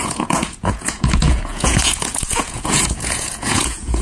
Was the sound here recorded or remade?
remade